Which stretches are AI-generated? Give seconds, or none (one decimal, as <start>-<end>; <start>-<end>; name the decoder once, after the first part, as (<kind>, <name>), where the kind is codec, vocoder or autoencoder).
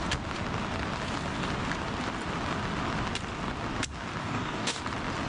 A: 4.2-4.8 (codec, DAC)